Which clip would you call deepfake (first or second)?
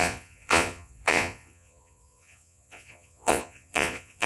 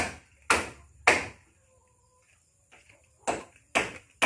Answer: first